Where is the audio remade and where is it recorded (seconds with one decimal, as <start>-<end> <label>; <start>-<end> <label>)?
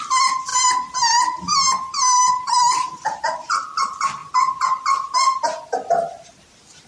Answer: 0.0-6.9 recorded